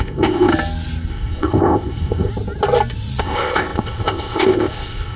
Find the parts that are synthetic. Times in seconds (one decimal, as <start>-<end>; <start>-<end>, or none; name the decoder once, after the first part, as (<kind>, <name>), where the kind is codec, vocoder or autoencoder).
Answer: 0.0-0.5 (codec, ZipCodec); 1.1-2.3; 3.2-5.2

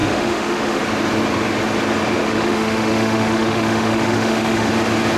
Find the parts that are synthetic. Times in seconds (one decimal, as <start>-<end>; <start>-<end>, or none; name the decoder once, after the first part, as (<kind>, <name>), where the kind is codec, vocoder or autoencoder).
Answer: 0.0-0.8 (autoencoder, DAC-VAE); 2.2-4.7

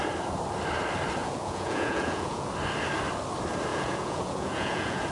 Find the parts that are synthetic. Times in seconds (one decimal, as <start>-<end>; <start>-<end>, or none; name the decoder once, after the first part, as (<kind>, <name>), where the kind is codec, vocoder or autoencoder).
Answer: 1.2-2.5 (vocoder, Vocos); 3.7-5.1